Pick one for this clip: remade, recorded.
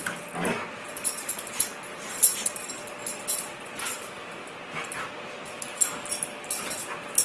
recorded